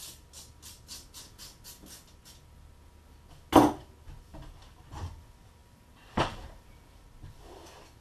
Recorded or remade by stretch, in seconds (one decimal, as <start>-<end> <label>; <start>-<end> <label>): 0.0-5.6 recorded; 5.6-7.4 remade; 7.4-8.0 recorded